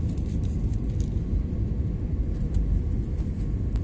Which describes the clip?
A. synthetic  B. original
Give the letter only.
B